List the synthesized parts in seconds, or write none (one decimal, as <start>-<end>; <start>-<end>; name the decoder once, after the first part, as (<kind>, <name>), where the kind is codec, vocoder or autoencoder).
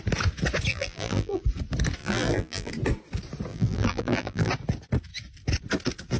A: 0.7-1.4 (vocoder, BigVGAN v2); 2.0-2.7; 3.5-4.5